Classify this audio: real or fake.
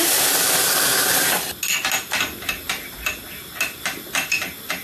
real